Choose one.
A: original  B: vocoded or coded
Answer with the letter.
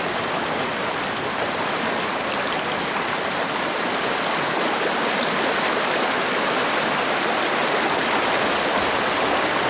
A